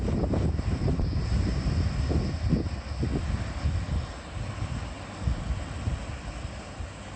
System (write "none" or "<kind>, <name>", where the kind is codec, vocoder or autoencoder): none